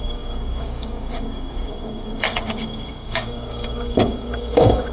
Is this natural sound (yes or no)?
no